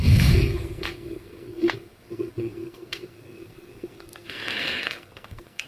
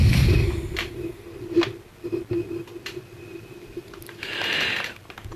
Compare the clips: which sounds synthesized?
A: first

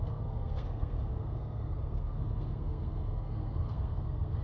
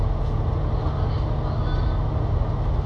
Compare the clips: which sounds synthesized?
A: first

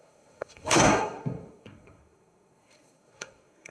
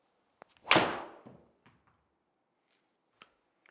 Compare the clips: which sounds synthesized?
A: first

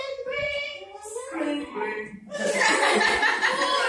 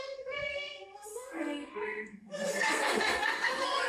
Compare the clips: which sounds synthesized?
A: second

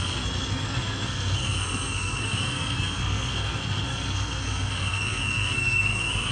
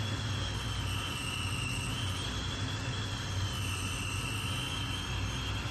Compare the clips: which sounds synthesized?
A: first